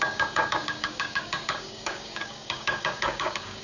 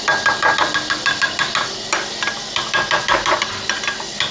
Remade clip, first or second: first